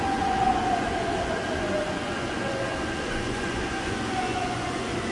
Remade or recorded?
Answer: remade